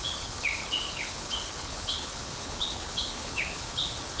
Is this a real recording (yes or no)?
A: no